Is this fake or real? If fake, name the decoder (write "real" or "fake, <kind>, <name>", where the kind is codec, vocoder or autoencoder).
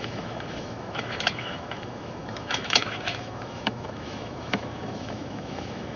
fake, autoencoder, DAC-VAE